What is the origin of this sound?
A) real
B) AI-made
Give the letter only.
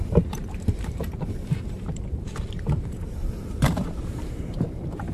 B